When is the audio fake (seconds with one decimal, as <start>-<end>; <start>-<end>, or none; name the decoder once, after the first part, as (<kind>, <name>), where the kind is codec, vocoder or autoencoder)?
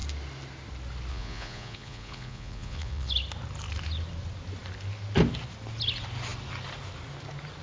1.1-3.1 (vocoder, Vocos)